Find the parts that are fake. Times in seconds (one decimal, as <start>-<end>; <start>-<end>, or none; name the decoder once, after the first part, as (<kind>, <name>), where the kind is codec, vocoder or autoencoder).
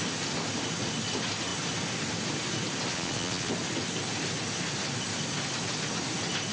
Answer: 2.9-3.5 (vocoder, Vocos)